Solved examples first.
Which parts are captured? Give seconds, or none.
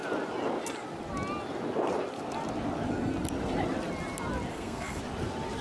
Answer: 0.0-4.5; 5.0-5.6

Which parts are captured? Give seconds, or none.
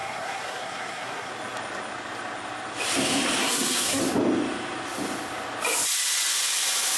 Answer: 1.3-3.4; 4.0-7.0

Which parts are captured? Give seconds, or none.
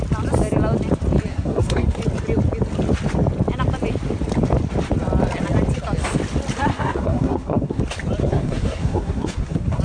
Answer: 0.0-1.3; 2.0-6.7; 7.8-8.2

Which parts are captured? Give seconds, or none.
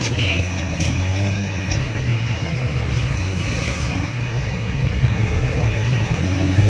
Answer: none